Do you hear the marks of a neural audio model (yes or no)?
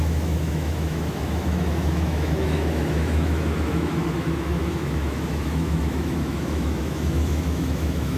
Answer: yes